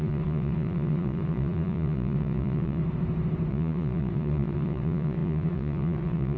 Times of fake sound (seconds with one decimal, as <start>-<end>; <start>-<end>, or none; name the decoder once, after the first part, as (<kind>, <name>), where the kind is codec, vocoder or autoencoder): 0.0-2.8 (vocoder, Vocos); 3.5-6.4